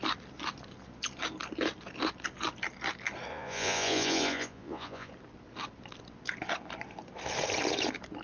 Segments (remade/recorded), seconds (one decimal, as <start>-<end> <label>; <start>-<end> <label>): 0.0-3.3 recorded; 3.3-5.1 remade; 5.1-8.2 recorded